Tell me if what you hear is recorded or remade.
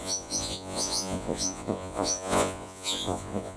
remade